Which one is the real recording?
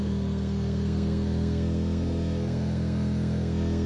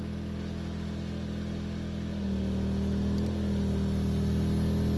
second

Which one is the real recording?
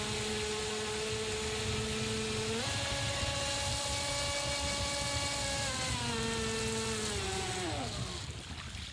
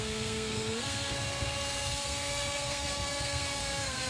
first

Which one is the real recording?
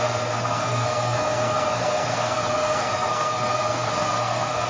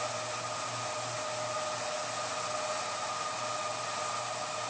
second